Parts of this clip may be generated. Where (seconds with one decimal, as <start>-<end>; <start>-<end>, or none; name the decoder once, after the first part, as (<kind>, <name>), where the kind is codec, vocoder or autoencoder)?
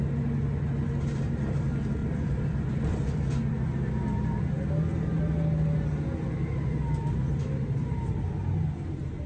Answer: 2.0-4.4 (vocoder, BigVGAN v2)